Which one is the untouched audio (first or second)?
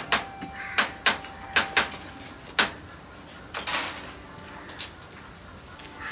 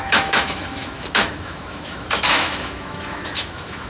first